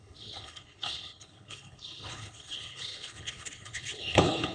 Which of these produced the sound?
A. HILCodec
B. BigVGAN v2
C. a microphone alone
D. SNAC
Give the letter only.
A